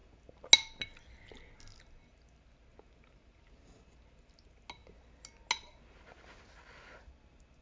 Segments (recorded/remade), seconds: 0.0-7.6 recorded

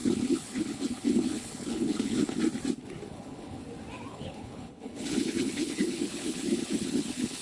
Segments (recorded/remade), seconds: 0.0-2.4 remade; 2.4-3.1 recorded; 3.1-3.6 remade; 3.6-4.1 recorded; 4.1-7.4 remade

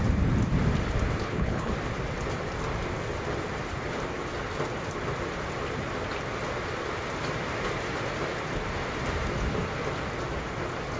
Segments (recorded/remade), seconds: 0.0-1.2 recorded; 1.2-1.7 remade; 1.7-11.0 recorded

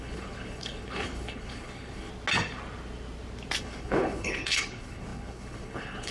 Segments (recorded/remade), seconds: 0.0-2.1 remade; 2.1-3.6 recorded; 3.6-6.1 remade

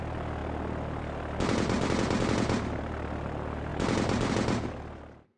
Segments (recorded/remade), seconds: 0.0-5.4 recorded

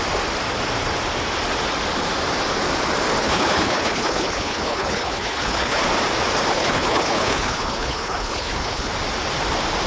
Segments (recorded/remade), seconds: 0.0-3.2 recorded; 3.2-5.8 remade; 5.8-6.5 recorded; 6.5-8.9 remade; 8.9-9.9 recorded